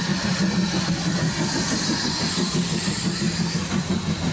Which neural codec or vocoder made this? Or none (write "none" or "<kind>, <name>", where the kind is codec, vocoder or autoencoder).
none